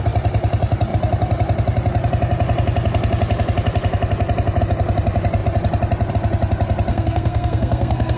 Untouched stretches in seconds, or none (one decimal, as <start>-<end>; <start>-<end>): 0.0-6.9